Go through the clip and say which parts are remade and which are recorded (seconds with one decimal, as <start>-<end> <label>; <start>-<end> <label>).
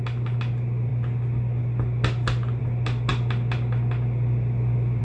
0.0-5.0 recorded